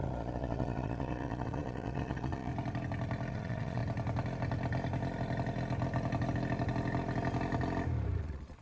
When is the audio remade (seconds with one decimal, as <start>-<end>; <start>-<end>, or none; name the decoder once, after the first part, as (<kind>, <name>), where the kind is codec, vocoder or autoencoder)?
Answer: 0.0-2.5 (vocoder, Vocos); 3.3-3.8; 8.2-8.6